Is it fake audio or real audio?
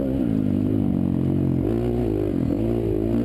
real